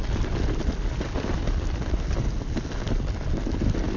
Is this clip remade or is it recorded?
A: recorded